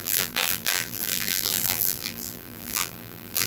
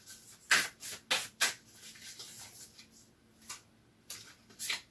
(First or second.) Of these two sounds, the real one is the second